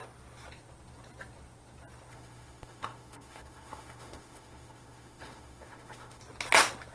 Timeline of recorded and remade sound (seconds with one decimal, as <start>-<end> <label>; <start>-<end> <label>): 0.0-2.1 recorded; 2.1-6.2 remade; 6.2-6.9 recorded